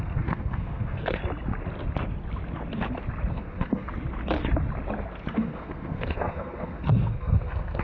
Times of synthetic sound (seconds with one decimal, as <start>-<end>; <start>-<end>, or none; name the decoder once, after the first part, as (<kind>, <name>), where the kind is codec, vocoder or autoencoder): 0.0-1.2 (codec, SNAC); 3.3-3.9; 5.3-7.8